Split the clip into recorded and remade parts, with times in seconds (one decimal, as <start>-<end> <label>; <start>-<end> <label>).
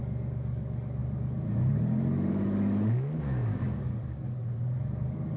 0.0-5.4 remade